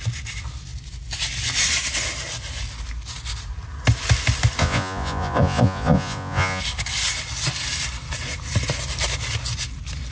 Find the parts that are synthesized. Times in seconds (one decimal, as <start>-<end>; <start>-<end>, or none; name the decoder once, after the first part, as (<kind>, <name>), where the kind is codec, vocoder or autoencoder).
4.6-6.6 (vocoder, Vocos)